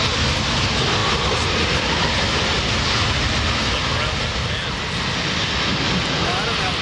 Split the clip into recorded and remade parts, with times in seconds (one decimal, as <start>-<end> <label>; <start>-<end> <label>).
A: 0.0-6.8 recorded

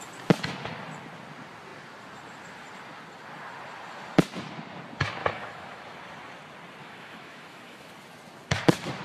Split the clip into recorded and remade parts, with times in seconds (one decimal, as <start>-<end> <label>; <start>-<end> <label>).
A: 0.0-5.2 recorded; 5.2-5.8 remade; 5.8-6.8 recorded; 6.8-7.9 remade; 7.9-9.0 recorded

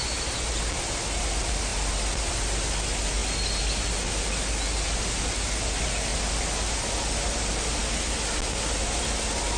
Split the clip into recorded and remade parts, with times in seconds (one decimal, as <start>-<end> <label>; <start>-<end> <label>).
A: 0.0-9.6 recorded

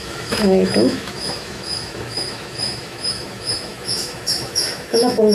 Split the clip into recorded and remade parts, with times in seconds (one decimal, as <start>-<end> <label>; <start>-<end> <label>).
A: 0.0-5.3 remade

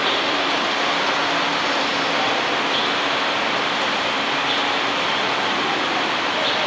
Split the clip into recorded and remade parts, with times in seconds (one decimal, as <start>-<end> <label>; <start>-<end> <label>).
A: 0.0-6.7 recorded